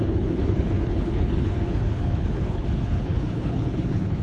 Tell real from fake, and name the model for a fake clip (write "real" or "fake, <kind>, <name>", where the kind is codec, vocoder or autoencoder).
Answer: fake, codec, HILCodec